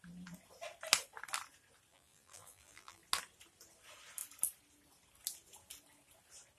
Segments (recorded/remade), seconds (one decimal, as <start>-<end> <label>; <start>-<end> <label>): 0.0-1.9 recorded; 1.9-3.0 remade; 3.0-6.6 recorded